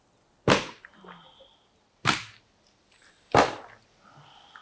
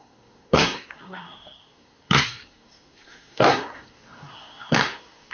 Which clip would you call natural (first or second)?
first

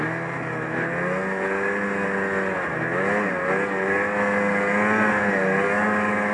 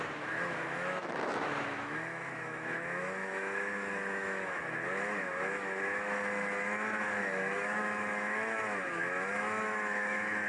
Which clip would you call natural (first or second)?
first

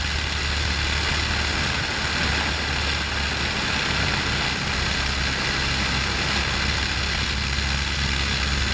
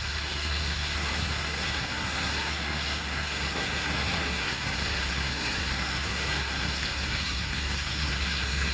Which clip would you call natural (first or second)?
first